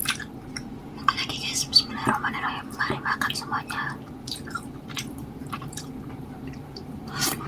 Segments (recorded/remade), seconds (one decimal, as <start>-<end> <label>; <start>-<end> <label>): 0.0-4.5 recorded; 4.5-7.5 remade